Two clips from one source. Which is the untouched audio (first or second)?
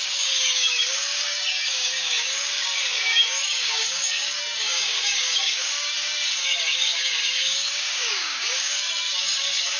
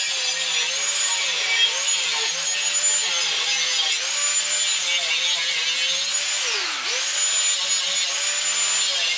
second